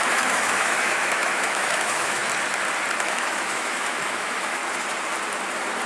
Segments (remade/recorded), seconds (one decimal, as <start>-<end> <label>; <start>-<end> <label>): 0.0-2.2 remade; 2.2-3.0 recorded; 3.0-4.6 remade; 4.6-5.9 recorded